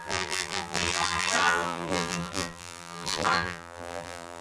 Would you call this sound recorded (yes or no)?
no